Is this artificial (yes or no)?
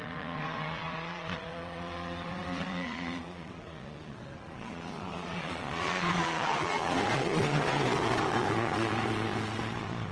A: yes